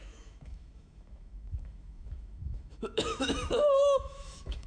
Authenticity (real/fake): fake